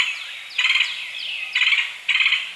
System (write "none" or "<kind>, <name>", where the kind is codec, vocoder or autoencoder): none